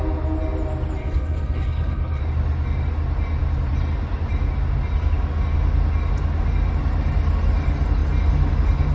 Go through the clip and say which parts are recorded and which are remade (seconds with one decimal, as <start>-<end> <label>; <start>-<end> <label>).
0.0-1.0 recorded; 1.0-2.2 remade; 2.2-8.9 recorded